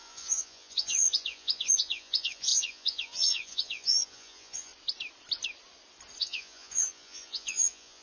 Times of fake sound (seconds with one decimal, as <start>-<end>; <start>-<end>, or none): 0.0-4.7; 6.2-8.0